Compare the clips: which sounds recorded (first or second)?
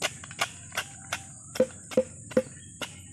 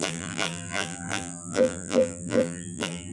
first